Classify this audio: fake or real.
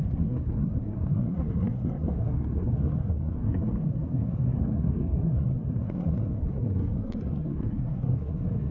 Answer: fake